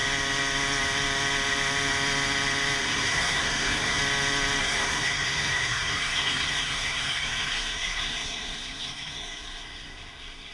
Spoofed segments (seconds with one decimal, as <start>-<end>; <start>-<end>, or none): 2.8-4.0; 4.6-10.5

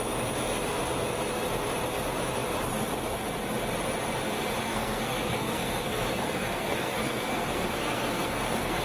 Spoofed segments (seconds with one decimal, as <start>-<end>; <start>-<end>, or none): 4.6-8.8

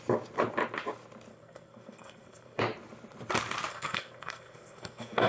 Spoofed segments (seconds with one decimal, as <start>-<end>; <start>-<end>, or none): 1.3-2.6; 3.7-5.3

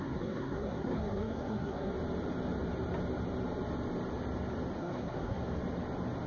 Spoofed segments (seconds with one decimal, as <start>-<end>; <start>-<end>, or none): 0.0-1.9; 4.8-5.4